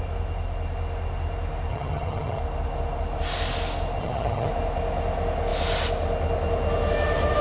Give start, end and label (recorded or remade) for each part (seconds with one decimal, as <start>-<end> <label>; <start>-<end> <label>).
0.0-1.7 recorded; 1.7-2.4 remade; 2.4-4.0 recorded; 4.0-4.5 remade; 4.5-7.4 recorded